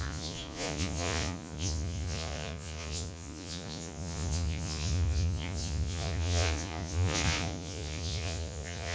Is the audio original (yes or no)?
no